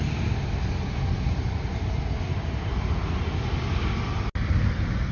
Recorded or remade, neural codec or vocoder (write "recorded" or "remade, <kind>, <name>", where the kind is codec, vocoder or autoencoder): recorded